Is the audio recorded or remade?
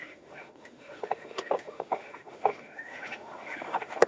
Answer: remade